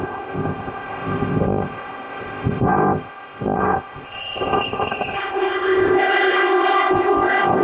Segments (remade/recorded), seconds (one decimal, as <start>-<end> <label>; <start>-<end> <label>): 0.0-7.6 remade